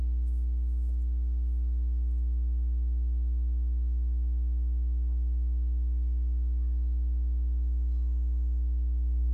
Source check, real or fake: real